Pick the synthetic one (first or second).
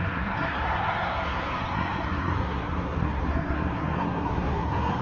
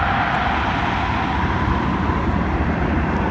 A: first